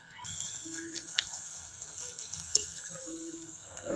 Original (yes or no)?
no